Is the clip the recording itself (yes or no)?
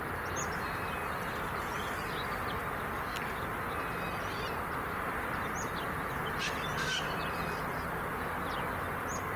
yes